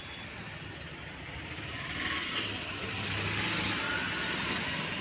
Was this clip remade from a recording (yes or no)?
no